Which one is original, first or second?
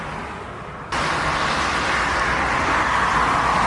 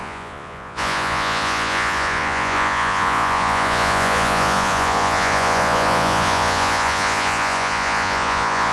first